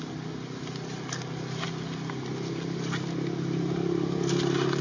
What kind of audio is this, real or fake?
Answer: real